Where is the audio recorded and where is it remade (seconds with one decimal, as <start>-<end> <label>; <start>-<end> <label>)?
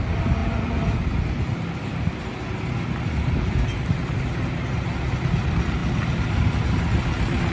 0.0-7.5 recorded